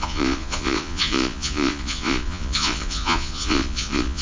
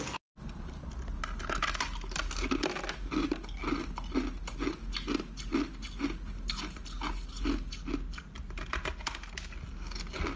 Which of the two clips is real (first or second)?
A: second